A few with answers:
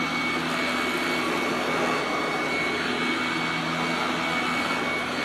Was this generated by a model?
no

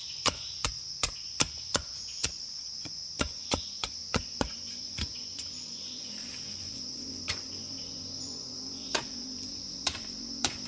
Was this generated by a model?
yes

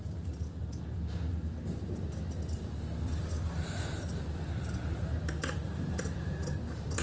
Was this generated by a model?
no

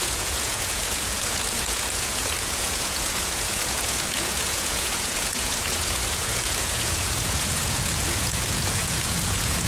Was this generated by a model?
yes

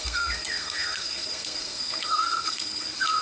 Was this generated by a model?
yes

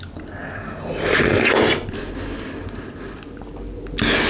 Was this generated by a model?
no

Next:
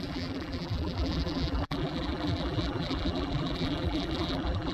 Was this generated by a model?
yes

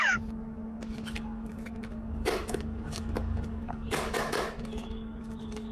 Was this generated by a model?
yes